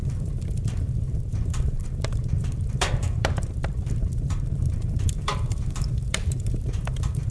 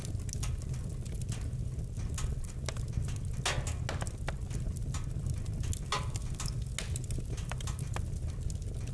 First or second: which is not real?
first